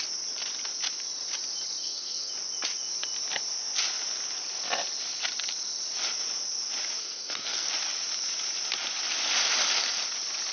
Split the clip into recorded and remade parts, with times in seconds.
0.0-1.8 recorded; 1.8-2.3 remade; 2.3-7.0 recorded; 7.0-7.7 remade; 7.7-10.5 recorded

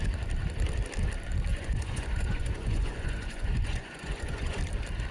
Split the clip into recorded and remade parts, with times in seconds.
0.0-1.5 recorded; 1.5-4.6 remade; 4.6-5.1 recorded

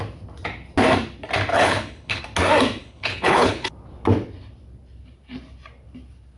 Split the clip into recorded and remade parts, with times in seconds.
0.0-1.5 recorded; 1.5-2.2 remade; 2.2-2.8 recorded; 2.8-3.7 remade; 3.7-6.4 recorded

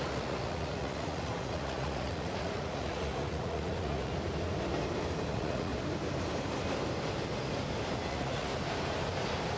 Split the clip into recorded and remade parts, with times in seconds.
0.0-4.1 remade; 4.1-5.3 recorded; 5.3-5.7 remade; 5.7-8.1 recorded; 8.1-8.5 remade; 8.5-9.6 recorded